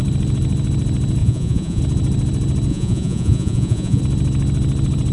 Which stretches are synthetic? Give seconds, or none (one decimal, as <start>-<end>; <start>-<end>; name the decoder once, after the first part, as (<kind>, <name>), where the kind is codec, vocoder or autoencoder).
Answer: 1.2-1.8 (vocoder, Vocos); 2.7-4.0